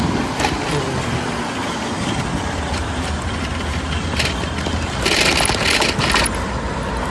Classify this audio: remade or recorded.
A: recorded